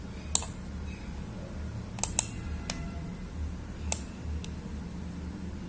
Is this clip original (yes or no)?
yes